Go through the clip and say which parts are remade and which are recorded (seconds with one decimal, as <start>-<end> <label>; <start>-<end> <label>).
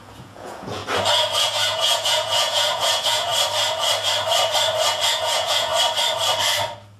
0.0-0.8 remade; 0.8-1.4 recorded; 1.4-3.3 remade; 3.3-5.1 recorded; 5.1-5.7 remade; 5.7-7.0 recorded